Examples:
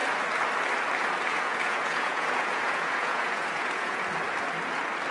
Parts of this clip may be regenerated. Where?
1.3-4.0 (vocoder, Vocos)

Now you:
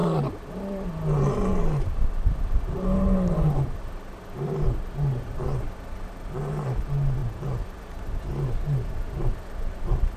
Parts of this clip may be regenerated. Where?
none

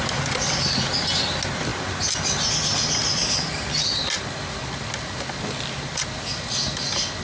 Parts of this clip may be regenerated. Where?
none

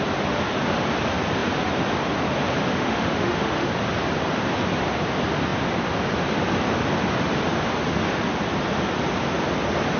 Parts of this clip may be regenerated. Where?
2.7-3.7 (autoencoder, DAC-VAE)

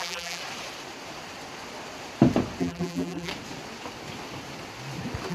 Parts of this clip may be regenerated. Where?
0.0-0.4 (vocoder, BigVGAN v2); 2.6-3.3